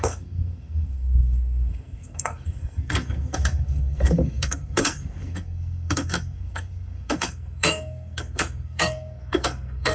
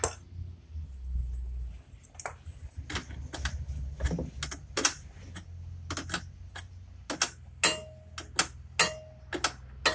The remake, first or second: first